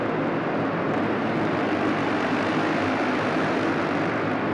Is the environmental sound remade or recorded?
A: recorded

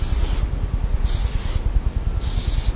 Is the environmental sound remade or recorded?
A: recorded